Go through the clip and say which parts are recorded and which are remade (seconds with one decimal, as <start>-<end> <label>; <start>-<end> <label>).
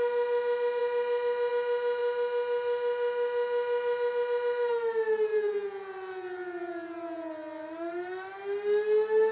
0.0-5.3 recorded; 5.3-7.3 remade; 7.3-9.3 recorded